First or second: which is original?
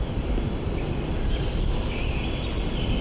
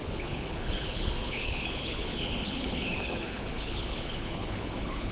first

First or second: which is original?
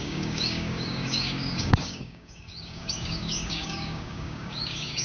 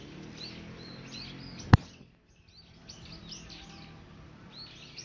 second